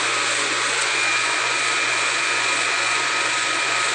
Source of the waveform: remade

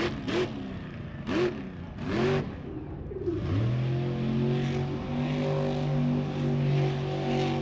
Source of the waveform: recorded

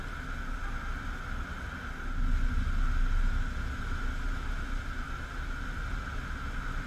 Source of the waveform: recorded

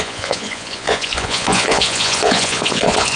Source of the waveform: remade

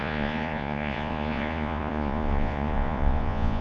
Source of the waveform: remade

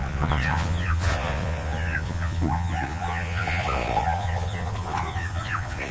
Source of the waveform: remade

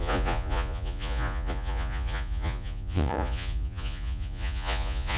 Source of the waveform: remade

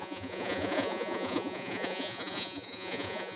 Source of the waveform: remade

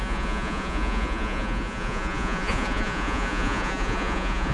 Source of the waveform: remade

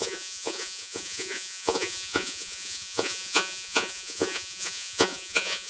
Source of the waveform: remade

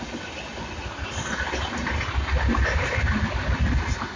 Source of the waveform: recorded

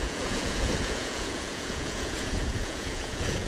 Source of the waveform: remade